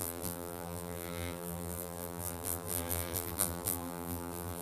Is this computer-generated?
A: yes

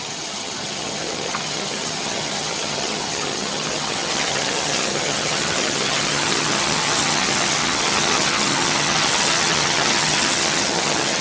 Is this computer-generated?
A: yes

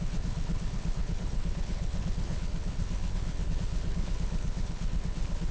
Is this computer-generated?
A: yes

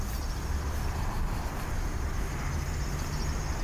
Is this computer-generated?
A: no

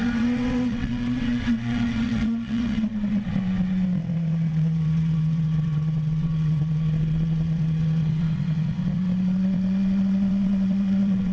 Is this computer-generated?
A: yes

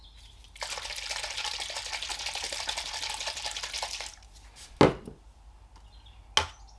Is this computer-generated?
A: no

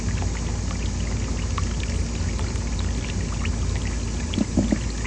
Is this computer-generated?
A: no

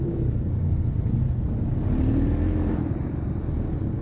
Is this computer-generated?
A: no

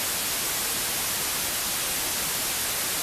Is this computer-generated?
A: no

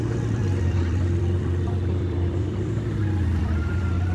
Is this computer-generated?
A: yes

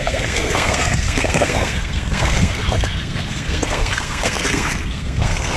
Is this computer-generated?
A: yes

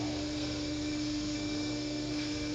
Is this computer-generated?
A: yes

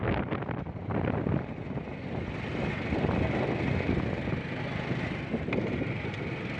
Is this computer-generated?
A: no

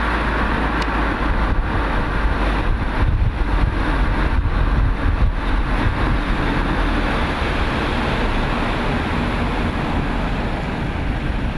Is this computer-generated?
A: no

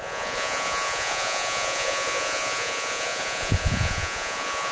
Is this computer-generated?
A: yes